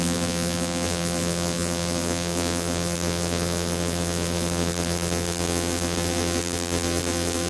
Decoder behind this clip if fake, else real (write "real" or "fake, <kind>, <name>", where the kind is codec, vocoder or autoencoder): fake, vocoder, BigVGAN v2